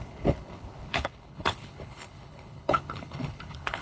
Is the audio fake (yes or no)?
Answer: yes